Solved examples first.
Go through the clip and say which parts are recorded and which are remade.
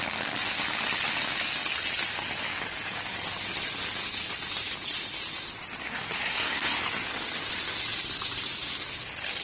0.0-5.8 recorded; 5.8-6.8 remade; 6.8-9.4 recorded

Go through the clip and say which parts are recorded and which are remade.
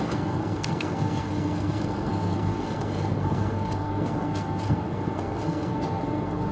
0.0-6.5 remade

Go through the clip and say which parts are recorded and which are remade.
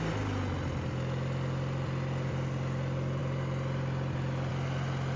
0.0-5.2 recorded